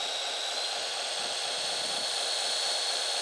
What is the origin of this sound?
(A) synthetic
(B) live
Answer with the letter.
A